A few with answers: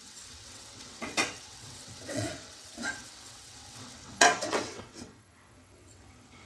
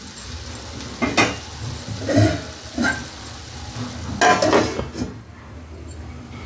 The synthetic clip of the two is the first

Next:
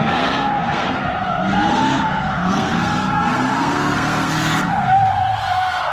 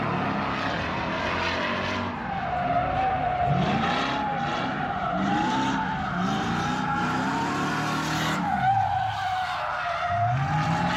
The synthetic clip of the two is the first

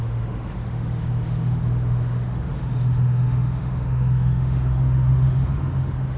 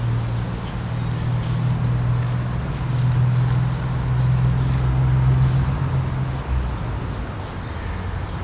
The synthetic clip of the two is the first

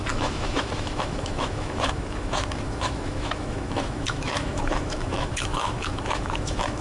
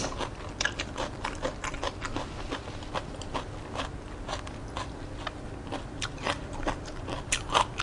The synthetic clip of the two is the first